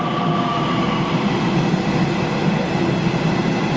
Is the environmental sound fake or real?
real